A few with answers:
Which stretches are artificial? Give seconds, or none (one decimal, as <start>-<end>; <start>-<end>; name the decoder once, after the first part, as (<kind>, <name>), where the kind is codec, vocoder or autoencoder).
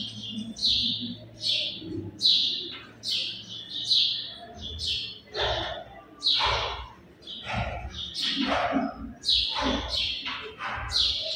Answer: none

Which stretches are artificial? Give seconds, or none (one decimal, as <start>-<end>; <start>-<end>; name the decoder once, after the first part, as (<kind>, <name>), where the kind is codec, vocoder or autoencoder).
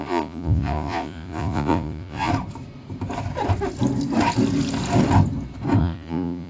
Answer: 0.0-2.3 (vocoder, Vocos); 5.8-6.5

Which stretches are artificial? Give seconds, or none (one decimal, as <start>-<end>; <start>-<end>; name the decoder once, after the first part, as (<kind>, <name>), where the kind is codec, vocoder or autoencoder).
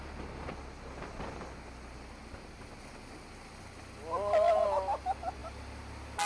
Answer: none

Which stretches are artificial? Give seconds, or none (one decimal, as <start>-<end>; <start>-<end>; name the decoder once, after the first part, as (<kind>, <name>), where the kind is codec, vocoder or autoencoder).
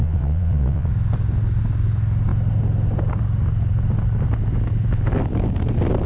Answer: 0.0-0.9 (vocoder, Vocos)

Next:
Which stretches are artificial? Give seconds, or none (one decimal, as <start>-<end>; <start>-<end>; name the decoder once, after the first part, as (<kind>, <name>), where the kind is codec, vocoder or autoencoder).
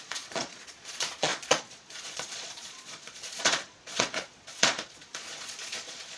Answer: 0.0-6.2 (vocoder, Vocos)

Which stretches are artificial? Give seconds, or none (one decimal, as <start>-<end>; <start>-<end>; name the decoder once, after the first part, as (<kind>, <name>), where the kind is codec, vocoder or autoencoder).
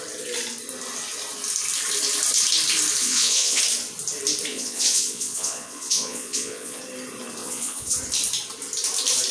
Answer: 3.0-3.6 (vocoder, Vocos); 4.5-6.8; 7.4-8.0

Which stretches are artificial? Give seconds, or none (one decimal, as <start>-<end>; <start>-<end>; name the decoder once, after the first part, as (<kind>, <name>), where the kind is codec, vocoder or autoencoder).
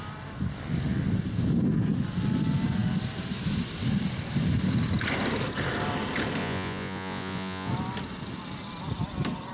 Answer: 6.4-7.7 (vocoder, Vocos)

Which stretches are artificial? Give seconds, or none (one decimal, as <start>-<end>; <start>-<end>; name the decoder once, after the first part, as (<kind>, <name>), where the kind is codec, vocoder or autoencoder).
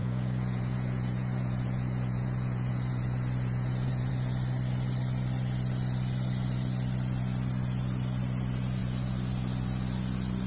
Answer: 0.0-4.1 (vocoder, Vocos)